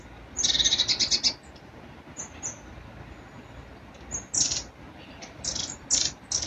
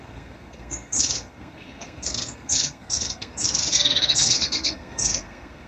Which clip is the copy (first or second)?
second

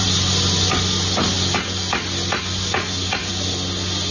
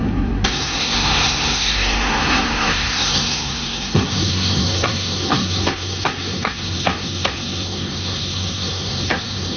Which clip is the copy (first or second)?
second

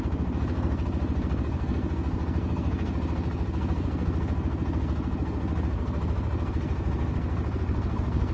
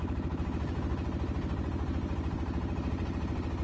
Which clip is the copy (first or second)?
first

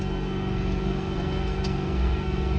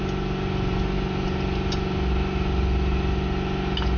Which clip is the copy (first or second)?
first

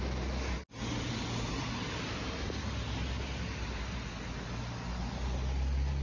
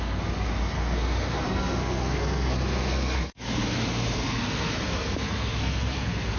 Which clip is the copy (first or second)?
second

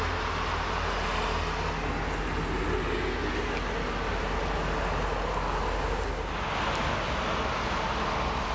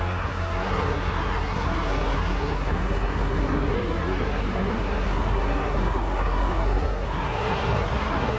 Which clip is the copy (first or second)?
second